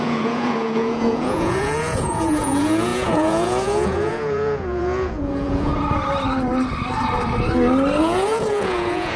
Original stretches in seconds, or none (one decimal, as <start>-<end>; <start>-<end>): 5.7-8.0